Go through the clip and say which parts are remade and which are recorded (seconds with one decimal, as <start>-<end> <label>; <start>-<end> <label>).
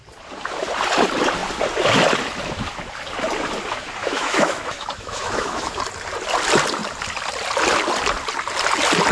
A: 0.0-4.0 recorded; 4.0-5.8 remade; 5.8-9.1 recorded